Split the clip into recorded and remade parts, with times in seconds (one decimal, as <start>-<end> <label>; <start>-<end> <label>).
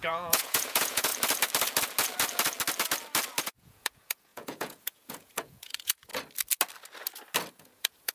0.0-1.1 remade; 1.1-3.4 recorded; 3.4-6.1 remade; 6.1-7.5 recorded; 7.5-8.1 remade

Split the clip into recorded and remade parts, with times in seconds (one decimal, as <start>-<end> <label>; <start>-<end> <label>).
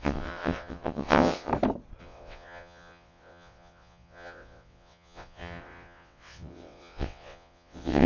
0.0-1.5 remade; 1.5-2.0 recorded; 2.0-8.1 remade